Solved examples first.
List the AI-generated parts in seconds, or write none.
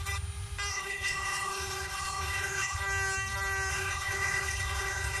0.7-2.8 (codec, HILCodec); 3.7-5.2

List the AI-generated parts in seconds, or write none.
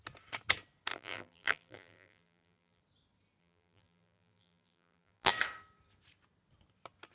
0.9-2.8 (vocoder, BigVGAN v2); 3.4-5.3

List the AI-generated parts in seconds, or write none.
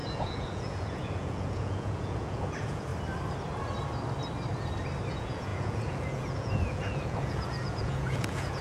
0.0-2.9 (vocoder, Vocos); 5.1-8.6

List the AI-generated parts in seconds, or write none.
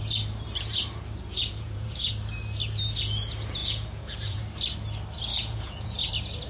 1.3-2.1 (vocoder, Vocos); 3.6-4.4; 5.3-6.1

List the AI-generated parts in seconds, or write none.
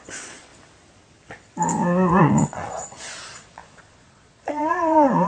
0.0-0.5 (vocoder, Vocos); 2.2-5.3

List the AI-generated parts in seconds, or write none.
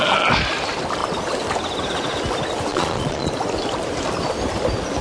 2.7-3.3 (vocoder, Vocos)